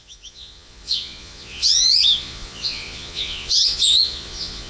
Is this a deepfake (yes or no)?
yes